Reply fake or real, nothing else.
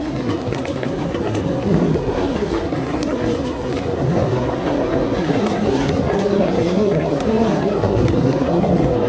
fake